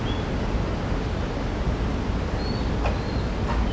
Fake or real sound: real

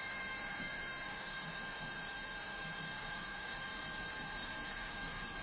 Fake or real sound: fake